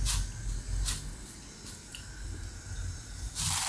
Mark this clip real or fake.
real